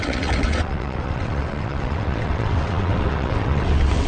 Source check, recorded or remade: remade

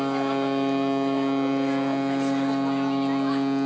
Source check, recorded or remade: recorded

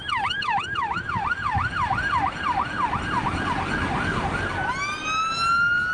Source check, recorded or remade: recorded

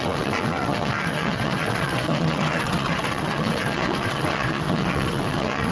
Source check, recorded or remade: remade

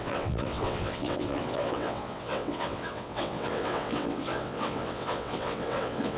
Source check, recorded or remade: remade